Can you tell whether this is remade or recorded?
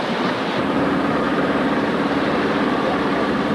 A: remade